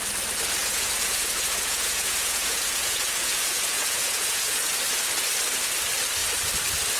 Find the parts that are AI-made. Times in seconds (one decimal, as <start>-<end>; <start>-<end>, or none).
0.6-4.8